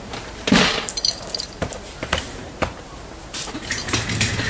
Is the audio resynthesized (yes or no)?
yes